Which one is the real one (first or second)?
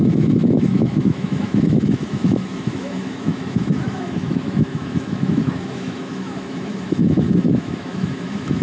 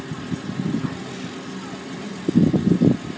second